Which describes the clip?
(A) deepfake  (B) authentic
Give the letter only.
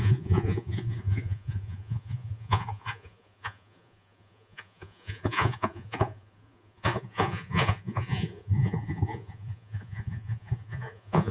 A